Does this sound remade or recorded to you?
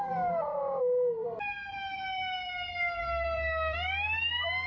recorded